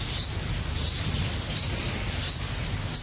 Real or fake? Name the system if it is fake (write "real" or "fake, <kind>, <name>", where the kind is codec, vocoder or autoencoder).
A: real